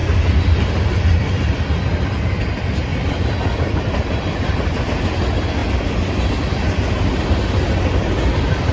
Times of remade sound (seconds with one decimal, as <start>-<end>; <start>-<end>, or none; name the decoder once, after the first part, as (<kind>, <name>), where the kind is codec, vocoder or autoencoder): 0.0-1.5 (vocoder, BigVGAN v2); 2.9-4.8